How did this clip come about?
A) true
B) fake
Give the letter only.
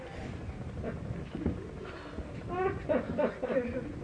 A